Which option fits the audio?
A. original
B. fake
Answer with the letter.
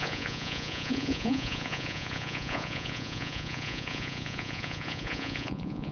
B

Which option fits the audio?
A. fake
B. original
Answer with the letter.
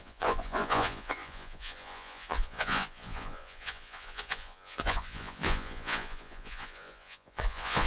A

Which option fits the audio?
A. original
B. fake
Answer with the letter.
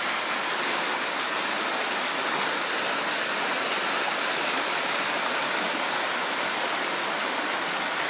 A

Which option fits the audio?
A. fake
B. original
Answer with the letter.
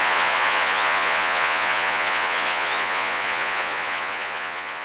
A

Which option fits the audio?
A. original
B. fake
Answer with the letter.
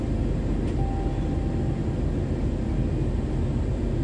A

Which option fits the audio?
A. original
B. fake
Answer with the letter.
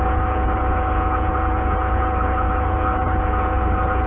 B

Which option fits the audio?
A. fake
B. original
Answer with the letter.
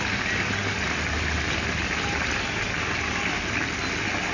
B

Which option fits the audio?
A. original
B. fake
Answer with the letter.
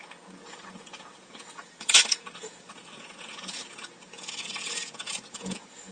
B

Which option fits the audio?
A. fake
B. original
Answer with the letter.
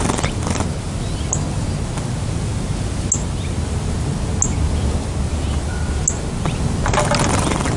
B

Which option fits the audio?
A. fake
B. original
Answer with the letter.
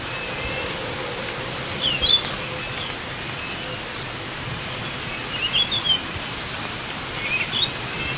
B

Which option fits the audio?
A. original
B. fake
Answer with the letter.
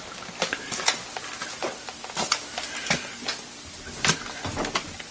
A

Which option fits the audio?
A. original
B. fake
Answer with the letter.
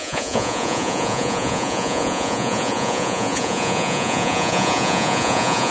B